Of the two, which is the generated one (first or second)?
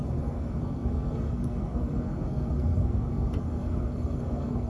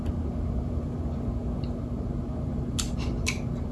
first